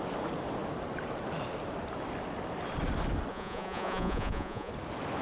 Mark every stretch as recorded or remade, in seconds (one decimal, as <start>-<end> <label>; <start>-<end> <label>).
0.0-3.3 recorded; 3.3-4.7 remade; 4.7-5.2 recorded